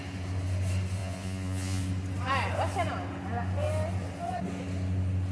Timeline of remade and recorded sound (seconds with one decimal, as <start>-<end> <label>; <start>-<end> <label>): 0.0-1.0 recorded; 1.0-1.8 remade; 1.8-5.3 recorded